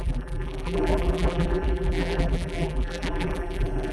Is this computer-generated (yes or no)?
yes